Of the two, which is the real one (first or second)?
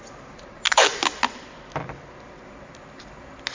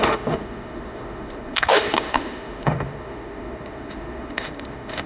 first